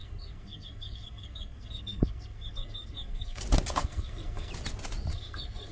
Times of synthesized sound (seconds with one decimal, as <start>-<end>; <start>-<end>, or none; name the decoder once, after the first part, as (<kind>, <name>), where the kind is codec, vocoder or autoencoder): 0.0-3.4 (codec, SNAC); 3.8-4.5; 5.1-5.7